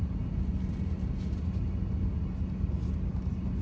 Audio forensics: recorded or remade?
recorded